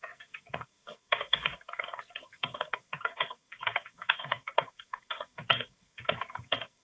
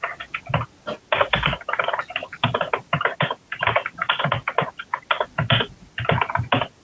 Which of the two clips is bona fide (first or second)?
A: second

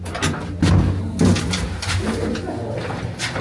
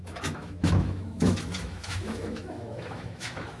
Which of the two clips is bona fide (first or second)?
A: first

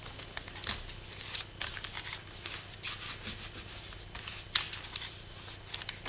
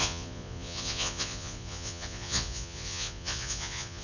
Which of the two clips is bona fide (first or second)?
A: first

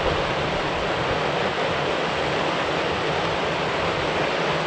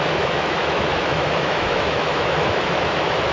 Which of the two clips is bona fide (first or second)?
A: first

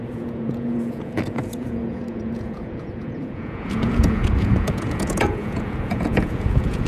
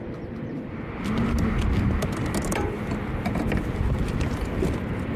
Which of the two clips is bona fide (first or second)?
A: second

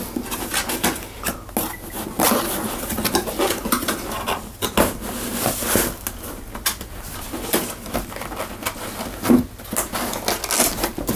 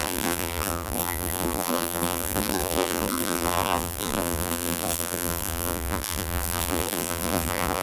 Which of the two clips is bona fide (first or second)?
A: first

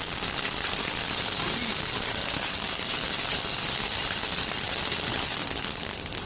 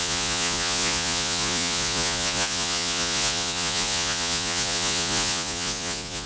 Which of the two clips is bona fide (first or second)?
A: first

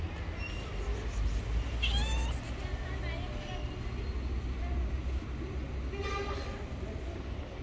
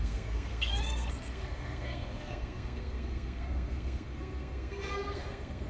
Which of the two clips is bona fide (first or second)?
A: first